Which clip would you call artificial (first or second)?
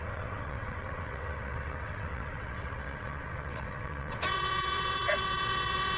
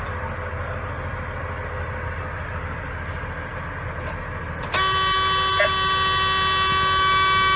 first